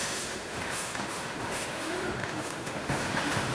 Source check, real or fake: fake